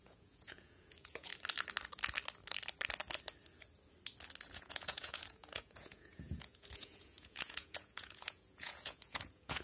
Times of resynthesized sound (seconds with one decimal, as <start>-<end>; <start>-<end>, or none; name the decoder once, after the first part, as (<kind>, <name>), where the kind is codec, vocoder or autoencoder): 0.0-1.3 (vocoder, Vocos); 4.5-9.6